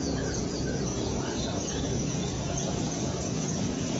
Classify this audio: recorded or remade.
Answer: remade